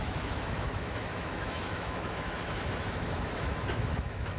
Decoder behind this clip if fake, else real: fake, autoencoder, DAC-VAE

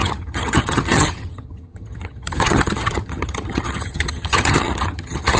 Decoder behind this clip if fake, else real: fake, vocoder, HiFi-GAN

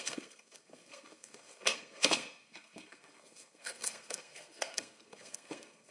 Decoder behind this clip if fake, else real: fake, codec, SNAC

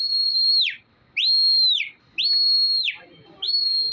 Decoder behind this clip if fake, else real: real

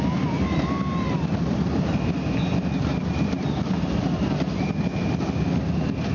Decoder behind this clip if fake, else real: real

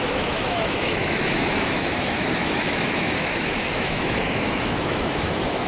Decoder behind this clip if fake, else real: fake, autoencoder, DAC-VAE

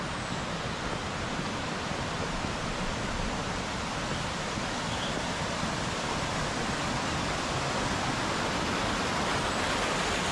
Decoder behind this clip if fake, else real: real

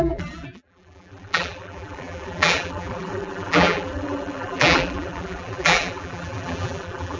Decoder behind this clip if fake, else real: fake, vocoder, BigVGAN v2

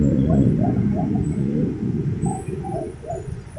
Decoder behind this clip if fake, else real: fake, vocoder, Vocos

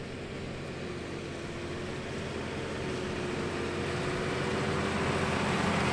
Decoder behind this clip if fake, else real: real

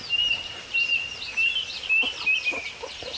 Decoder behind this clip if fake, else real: real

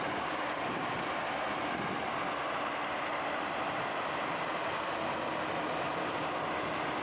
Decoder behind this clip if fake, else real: real